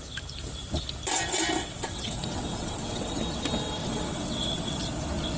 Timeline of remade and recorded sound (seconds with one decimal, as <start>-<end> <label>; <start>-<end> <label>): 0.0-1.6 recorded; 1.6-3.2 remade; 3.2-3.8 recorded; 3.8-4.9 remade; 4.9-5.4 recorded